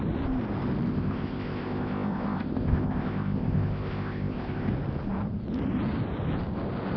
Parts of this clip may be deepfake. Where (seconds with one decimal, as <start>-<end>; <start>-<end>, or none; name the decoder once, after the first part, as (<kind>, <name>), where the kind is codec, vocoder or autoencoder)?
0.9-4.7 (codec, ZipCodec)